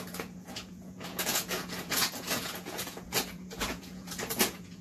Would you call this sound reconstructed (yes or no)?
yes